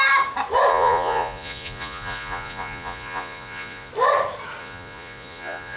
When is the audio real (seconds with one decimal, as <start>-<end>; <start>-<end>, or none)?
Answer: 0.0-0.7; 3.9-4.6